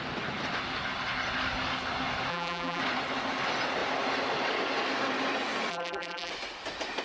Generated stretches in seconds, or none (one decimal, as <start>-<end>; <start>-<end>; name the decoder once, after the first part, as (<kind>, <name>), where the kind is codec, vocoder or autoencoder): 2.3-2.8 (vocoder, BigVGAN v2); 5.7-6.3